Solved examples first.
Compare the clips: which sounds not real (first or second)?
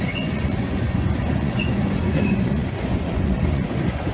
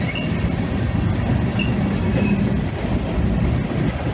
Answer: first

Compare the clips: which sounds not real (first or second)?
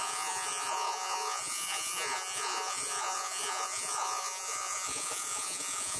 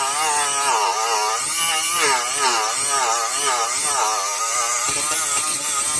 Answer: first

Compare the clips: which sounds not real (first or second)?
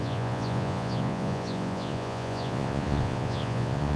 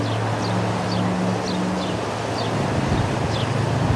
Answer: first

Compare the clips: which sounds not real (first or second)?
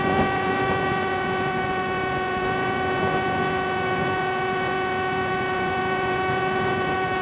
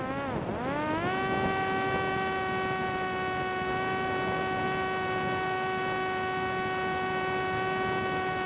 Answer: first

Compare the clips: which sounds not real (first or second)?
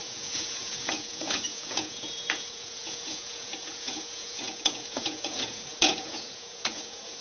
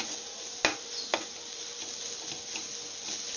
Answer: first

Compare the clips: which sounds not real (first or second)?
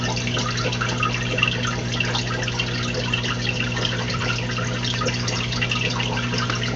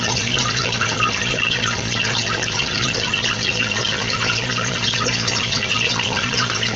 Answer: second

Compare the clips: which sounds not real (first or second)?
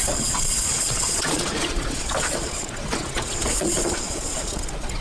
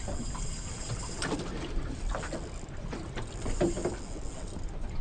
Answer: first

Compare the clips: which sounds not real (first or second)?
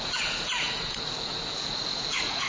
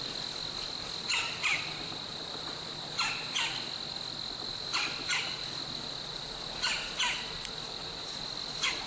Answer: first